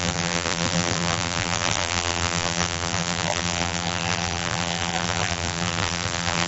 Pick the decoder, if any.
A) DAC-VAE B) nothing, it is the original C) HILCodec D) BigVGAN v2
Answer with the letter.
D